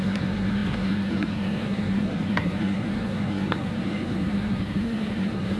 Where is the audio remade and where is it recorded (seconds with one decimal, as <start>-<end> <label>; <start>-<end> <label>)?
0.0-5.6 remade

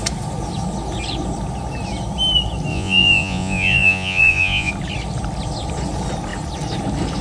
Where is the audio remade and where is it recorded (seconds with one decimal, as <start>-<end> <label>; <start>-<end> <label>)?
0.0-2.7 recorded; 2.7-4.7 remade; 4.7-7.2 recorded

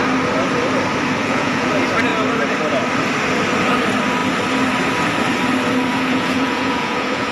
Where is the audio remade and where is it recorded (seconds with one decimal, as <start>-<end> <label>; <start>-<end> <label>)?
0.0-1.2 recorded; 1.2-1.7 remade; 1.7-5.9 recorded; 5.9-7.3 remade

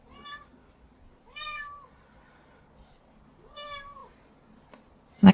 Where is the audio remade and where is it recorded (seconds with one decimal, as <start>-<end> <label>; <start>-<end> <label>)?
0.0-5.3 recorded

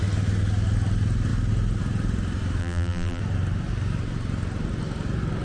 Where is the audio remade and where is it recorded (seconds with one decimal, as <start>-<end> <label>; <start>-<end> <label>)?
0.0-2.6 recorded; 2.6-3.2 remade; 3.2-5.4 recorded